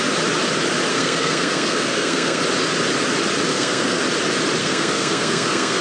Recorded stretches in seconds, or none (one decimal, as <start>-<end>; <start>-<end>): 0.0-0.9; 2.4-3.5; 4.0-4.6